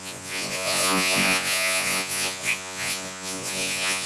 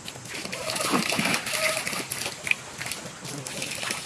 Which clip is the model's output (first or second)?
first